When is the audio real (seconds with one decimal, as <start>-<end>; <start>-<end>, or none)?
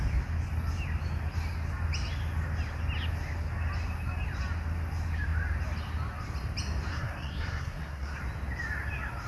0.0-6.9; 8.2-9.3